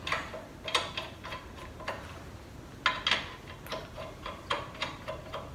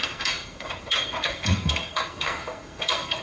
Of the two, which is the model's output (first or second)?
second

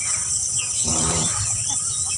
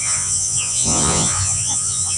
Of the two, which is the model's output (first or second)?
second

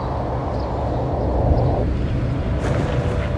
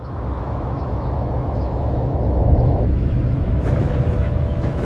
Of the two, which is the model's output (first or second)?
second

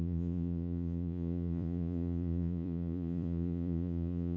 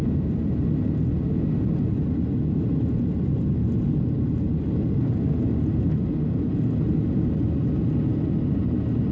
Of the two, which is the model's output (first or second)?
first